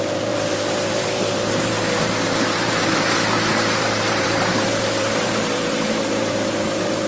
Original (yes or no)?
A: no